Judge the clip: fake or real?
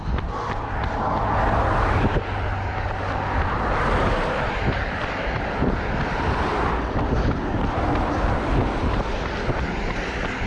real